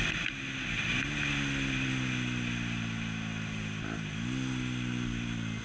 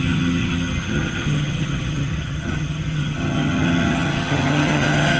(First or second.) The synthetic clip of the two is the second